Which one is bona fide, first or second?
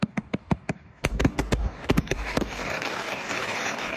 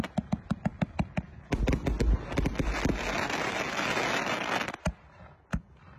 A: second